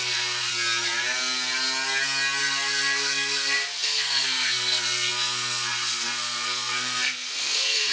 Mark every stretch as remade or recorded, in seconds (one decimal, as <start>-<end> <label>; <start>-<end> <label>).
0.0-0.5 remade; 0.5-2.4 recorded; 2.4-7.9 remade

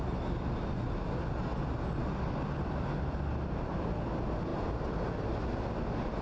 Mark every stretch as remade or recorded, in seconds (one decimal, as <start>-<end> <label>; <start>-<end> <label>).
0.0-6.2 recorded

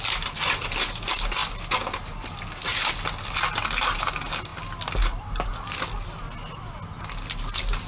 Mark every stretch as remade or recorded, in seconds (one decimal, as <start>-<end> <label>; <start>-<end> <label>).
0.0-7.9 recorded

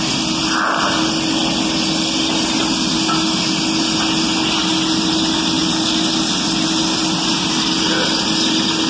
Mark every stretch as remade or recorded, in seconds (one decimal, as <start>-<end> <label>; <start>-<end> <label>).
0.0-8.9 recorded

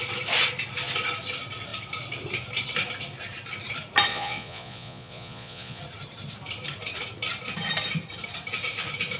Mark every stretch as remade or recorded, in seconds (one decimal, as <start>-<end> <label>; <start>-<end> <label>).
0.0-4.1 recorded; 4.1-5.8 remade; 5.8-9.2 recorded

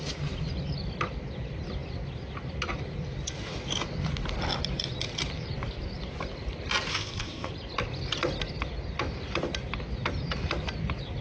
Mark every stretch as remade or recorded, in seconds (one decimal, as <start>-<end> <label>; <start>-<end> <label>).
0.0-6.9 recorded; 6.9-7.5 remade; 7.5-11.2 recorded

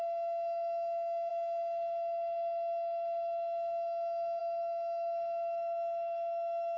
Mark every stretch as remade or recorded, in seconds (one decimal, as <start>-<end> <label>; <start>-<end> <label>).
0.0-6.8 remade